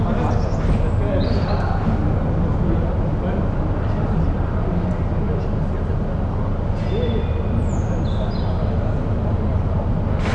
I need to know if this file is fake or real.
real